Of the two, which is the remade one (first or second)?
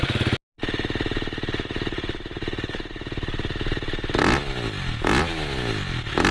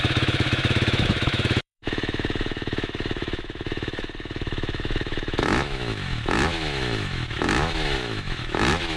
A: second